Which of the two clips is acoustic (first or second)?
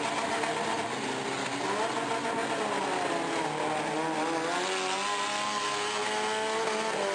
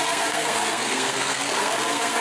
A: first